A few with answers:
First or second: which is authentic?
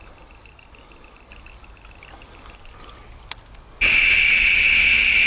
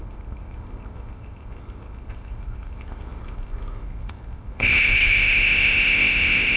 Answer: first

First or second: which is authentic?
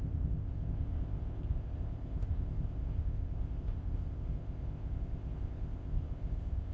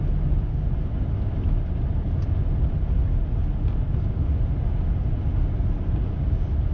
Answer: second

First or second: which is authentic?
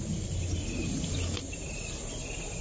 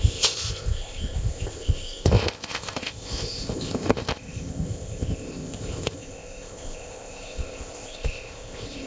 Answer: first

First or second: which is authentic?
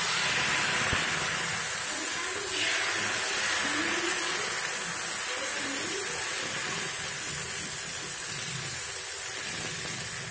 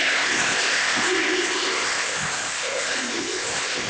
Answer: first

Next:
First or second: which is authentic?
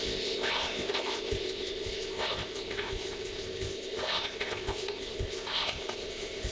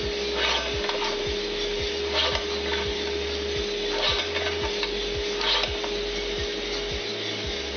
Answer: second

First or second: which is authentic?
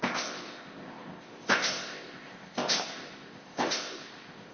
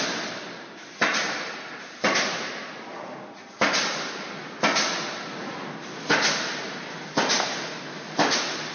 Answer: second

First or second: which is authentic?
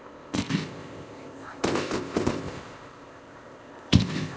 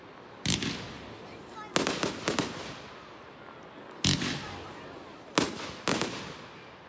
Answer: second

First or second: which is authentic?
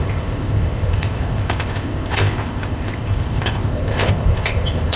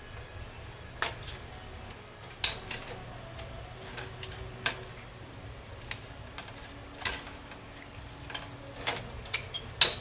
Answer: second